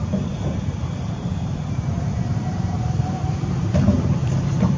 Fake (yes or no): yes